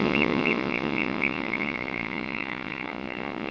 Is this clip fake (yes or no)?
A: yes